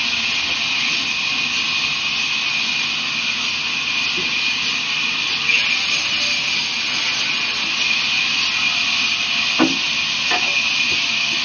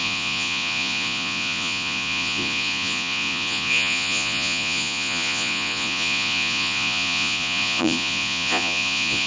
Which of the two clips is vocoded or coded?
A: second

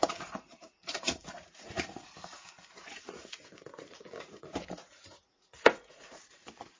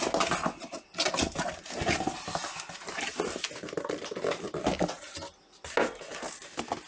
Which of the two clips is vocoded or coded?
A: first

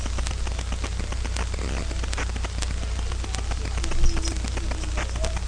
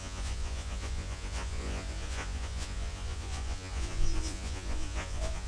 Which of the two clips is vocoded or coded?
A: second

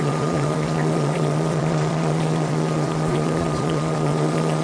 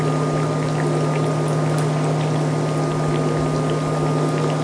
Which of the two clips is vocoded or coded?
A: first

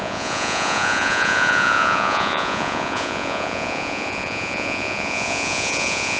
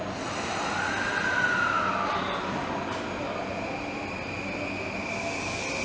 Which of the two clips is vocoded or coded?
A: first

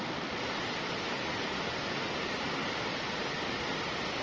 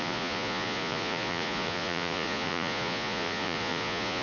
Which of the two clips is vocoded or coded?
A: second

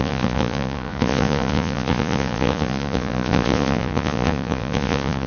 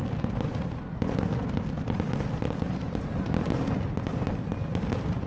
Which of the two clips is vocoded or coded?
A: first